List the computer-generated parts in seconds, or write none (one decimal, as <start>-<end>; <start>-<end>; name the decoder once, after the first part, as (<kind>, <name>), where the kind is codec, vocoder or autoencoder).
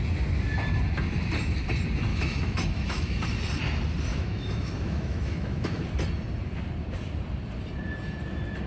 2.1-3.2 (autoencoder, DAC-VAE); 4.1-5.8